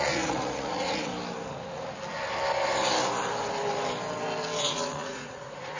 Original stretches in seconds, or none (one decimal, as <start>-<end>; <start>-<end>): 1.1-4.6